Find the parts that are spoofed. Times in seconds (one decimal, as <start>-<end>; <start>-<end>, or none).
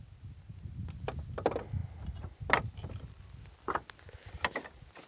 none